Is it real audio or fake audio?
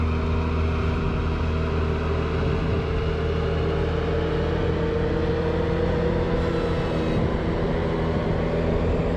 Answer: real